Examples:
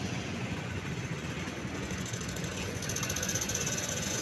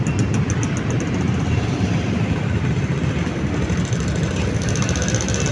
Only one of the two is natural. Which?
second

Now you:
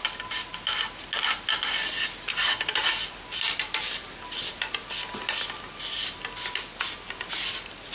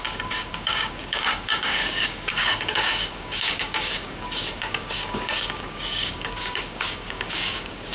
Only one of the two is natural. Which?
first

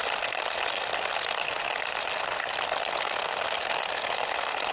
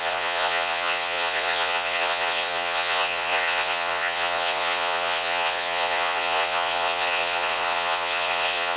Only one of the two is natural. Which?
first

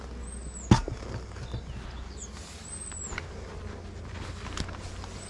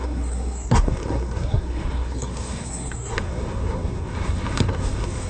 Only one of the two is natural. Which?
first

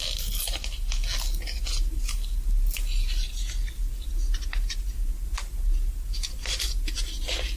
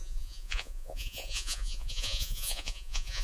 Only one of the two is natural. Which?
first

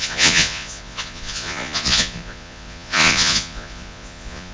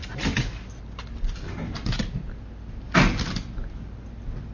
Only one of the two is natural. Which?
second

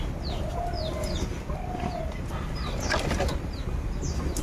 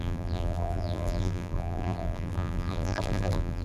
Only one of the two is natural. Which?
first